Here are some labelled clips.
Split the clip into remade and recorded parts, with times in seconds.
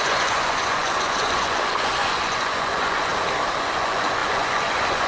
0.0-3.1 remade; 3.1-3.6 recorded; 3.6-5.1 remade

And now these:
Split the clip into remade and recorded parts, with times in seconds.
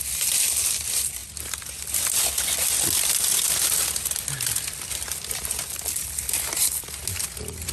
0.0-7.7 recorded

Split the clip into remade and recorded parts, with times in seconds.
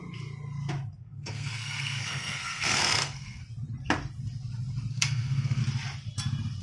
0.0-1.0 recorded; 1.0-3.4 remade; 3.4-4.9 recorded; 4.9-5.6 remade; 5.6-6.6 recorded